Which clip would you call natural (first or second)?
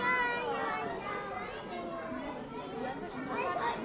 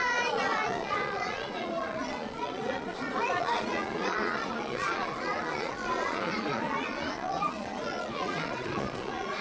first